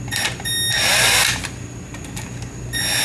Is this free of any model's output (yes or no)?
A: yes